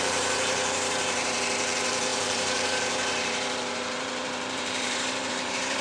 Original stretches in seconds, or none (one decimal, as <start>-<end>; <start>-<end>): none